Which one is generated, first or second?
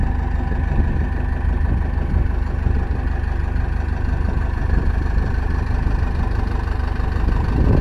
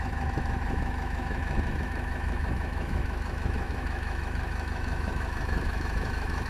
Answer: second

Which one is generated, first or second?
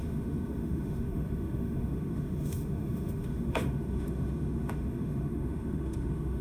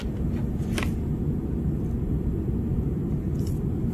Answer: first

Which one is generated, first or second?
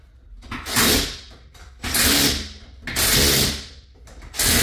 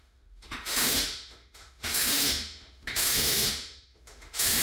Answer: second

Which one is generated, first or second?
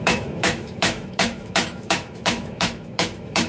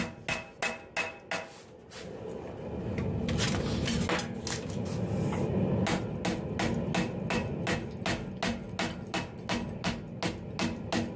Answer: first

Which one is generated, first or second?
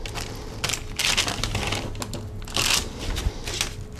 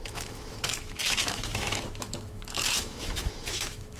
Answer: second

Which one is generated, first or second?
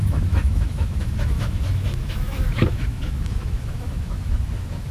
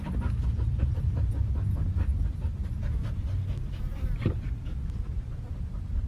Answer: first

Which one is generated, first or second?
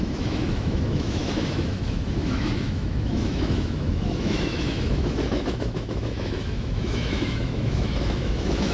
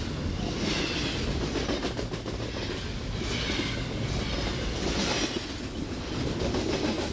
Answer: first